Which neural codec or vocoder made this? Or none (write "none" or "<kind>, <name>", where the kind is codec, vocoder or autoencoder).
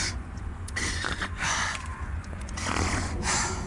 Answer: vocoder, Vocos